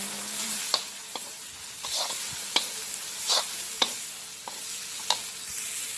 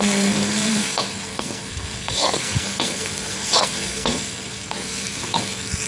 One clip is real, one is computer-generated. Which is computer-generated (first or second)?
second